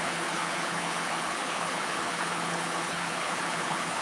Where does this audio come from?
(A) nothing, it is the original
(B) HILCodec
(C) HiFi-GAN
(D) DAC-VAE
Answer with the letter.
B